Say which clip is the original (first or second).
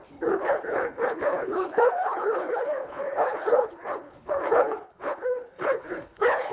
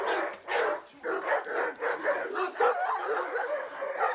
second